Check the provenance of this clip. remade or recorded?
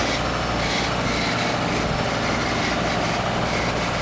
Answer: recorded